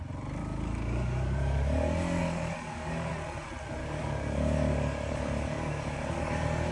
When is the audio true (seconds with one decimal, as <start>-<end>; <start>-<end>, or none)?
0.0-0.4; 3.1-3.8